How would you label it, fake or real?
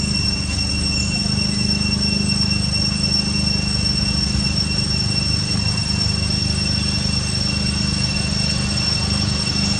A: real